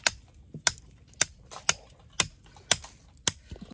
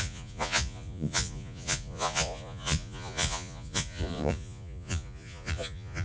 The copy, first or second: second